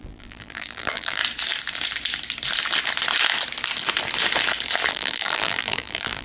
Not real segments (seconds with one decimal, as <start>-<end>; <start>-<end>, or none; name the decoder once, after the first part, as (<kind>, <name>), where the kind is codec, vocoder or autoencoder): 0.0-1.2 (vocoder, BigVGAN v2); 4.9-6.2